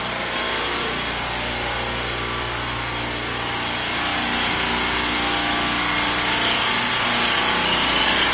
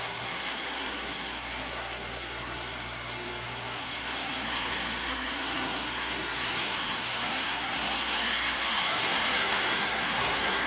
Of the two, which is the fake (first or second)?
second